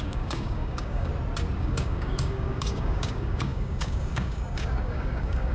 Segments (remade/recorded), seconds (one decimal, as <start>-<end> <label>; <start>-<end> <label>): 0.0-1.1 remade; 1.1-1.6 recorded; 1.6-5.5 remade